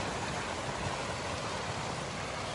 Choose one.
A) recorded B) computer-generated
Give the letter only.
A